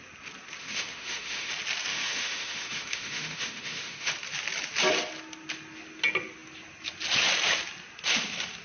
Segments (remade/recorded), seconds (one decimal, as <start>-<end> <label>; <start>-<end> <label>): 0.0-0.6 recorded; 0.6-1.5 remade; 1.5-1.9 recorded; 1.9-4.1 remade; 4.1-8.6 recorded